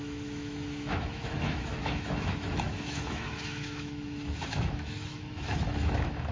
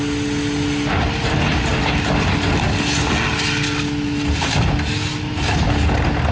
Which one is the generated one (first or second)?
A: first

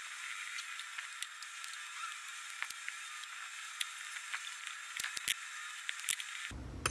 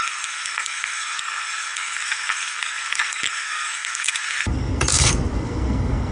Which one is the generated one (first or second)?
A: second